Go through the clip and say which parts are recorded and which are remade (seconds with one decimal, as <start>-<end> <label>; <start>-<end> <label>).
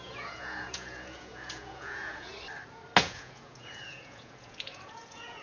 0.0-2.3 remade; 2.3-3.0 recorded; 3.0-5.4 remade